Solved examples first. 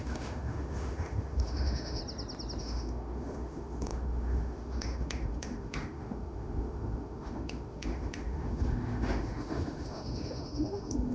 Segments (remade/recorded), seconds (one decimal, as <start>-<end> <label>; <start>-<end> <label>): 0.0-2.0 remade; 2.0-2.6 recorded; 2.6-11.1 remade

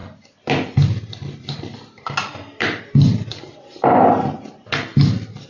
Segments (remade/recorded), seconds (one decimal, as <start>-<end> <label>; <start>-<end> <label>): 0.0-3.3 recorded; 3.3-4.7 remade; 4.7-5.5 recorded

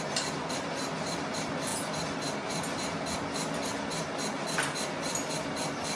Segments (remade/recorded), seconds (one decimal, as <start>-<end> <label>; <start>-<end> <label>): 0.0-6.0 recorded

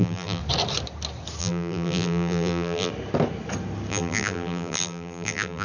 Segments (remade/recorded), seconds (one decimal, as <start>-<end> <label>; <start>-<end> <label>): 0.0-0.4 remade; 0.4-1.4 recorded; 1.4-2.9 remade; 2.9-3.9 recorded; 3.9-5.6 remade